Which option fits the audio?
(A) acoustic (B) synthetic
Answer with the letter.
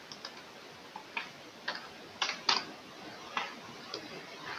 A